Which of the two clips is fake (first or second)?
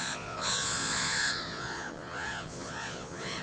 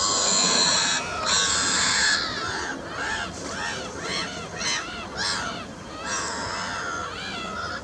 first